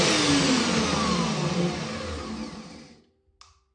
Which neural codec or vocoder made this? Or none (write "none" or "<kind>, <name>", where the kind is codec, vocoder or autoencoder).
none